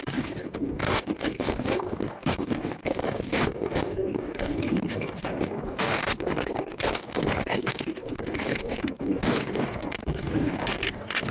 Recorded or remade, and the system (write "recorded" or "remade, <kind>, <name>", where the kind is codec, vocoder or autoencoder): remade, codec, DAC